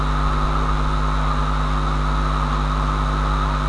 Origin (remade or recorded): recorded